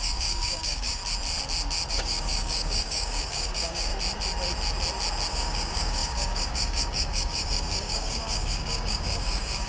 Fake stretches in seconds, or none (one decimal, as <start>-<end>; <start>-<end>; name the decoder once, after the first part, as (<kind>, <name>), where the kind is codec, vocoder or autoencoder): 0.0-1.0 (codec, DAC); 1.9-3.9; 5.3-9.7